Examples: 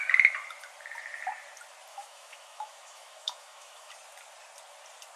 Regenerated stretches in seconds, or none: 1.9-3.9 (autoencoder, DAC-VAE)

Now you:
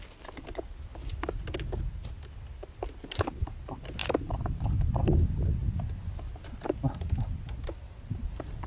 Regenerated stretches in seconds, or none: 4.0-5.0 (vocoder, BigVGAN v2)

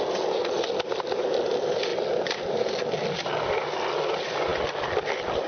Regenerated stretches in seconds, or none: none

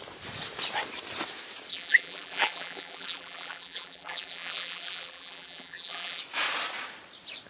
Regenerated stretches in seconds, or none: 1.7-6.2 (vocoder, BigVGAN v2)